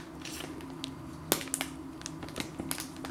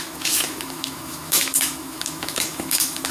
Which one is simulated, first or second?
second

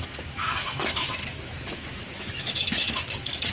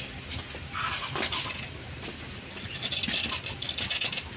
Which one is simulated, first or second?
first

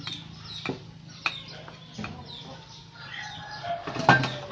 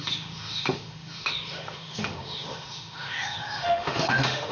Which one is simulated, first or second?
second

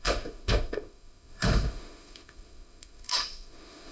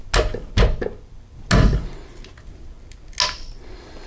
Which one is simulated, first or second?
first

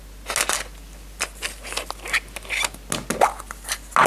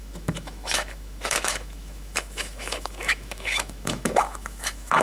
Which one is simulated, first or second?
second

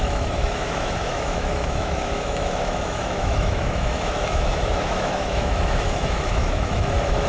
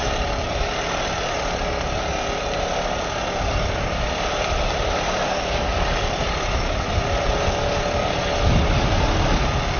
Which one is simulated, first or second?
first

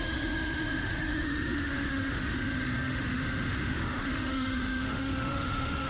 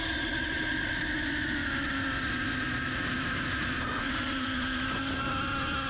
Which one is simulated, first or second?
first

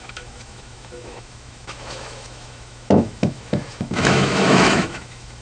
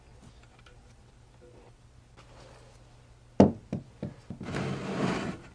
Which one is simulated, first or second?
first